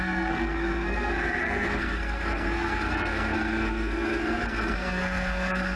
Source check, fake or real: fake